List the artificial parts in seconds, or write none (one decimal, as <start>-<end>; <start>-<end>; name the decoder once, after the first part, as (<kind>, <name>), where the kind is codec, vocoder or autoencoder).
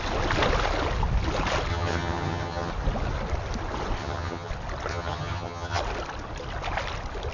1.7-2.7 (vocoder, HiFi-GAN); 4.0-4.5; 4.9-5.8